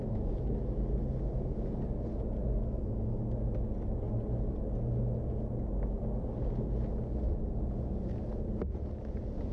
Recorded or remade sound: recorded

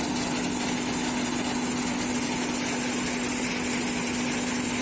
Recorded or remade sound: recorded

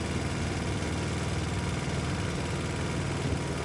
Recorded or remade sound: recorded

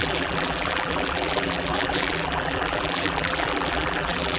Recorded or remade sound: remade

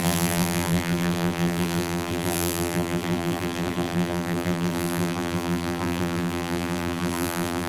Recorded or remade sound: remade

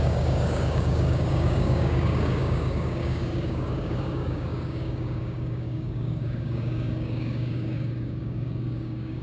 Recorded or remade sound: remade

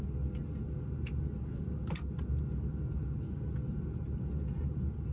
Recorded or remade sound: recorded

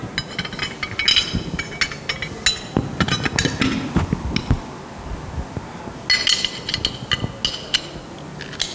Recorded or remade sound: recorded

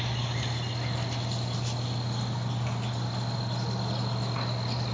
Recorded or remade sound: remade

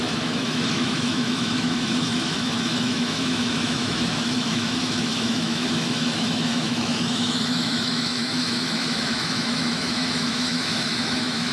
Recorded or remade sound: remade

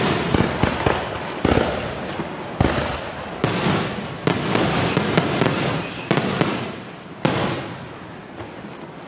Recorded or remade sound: recorded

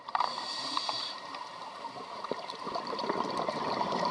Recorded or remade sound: remade